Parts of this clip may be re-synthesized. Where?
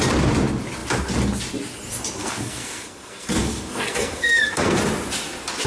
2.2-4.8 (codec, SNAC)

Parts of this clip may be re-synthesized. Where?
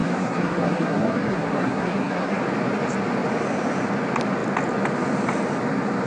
0.0-2.4 (codec, SNAC)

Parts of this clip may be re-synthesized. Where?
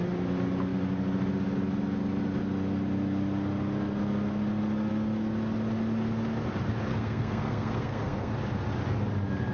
6.9-8.3 (codec, SNAC)